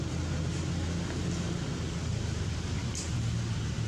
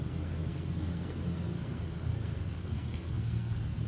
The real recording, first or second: first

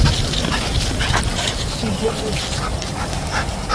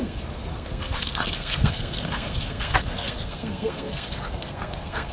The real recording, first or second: first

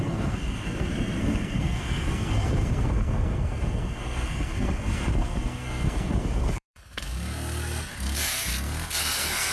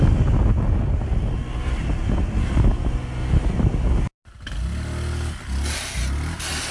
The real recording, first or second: second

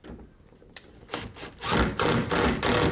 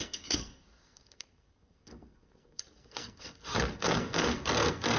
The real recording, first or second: first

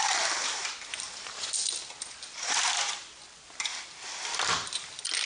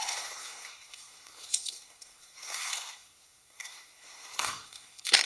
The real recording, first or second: first